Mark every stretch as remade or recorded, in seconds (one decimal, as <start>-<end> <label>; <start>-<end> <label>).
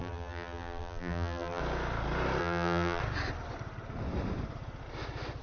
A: 0.0-1.6 remade; 1.6-2.4 recorded; 2.4-3.0 remade; 3.0-5.4 recorded